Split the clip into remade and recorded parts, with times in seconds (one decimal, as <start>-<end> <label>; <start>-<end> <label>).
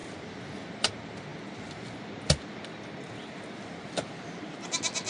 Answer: 0.0-5.1 recorded